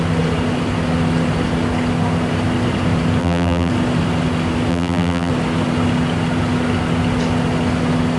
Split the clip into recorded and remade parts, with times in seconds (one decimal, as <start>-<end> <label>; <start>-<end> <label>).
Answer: 0.0-3.2 recorded; 3.2-3.7 remade; 3.7-4.7 recorded; 4.7-5.3 remade; 5.3-8.2 recorded